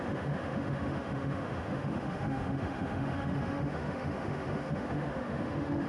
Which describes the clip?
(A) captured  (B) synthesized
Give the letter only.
B